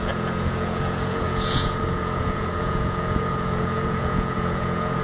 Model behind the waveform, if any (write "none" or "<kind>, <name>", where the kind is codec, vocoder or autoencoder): vocoder, Vocos